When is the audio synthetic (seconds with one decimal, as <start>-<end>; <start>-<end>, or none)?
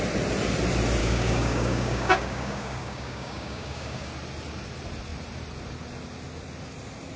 1.0-4.1